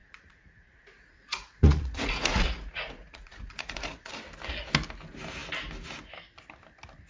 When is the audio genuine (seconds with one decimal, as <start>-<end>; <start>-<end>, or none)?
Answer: 4.1-7.1